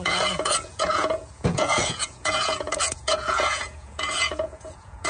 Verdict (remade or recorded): remade